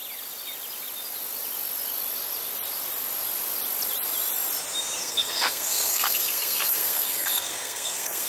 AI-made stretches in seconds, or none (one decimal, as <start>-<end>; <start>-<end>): 5.0-8.3